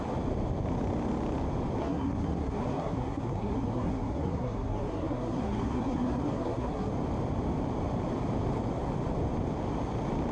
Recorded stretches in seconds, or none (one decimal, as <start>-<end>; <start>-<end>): 0.0-1.8; 6.9-10.3